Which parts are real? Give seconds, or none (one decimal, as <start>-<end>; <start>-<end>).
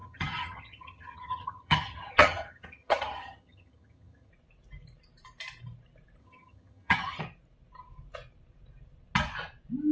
4.3-6.2; 7.2-9.9